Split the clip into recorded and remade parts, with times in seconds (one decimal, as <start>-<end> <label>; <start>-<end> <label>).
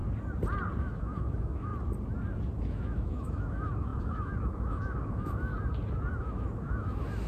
0.0-0.8 recorded; 0.8-1.7 remade; 1.7-2.6 recorded; 2.6-5.5 remade; 5.5-6.1 recorded; 6.1-7.3 remade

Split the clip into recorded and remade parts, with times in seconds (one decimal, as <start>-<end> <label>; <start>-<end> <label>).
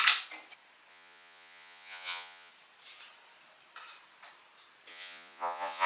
0.0-0.9 recorded; 0.9-2.5 remade; 2.5-4.9 recorded; 4.9-5.9 remade